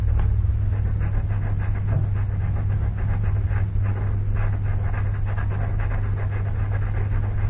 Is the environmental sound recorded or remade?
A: recorded